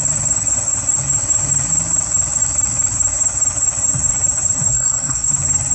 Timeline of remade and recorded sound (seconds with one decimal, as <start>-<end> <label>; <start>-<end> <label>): 0.0-4.7 recorded; 4.7-5.3 remade; 5.3-5.7 recorded